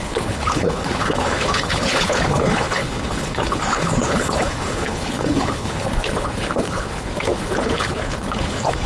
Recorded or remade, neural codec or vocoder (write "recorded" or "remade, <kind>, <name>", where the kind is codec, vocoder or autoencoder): remade, codec, HILCodec